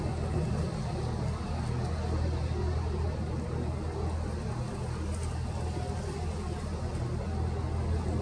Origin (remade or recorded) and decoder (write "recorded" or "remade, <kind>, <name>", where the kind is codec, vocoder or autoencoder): recorded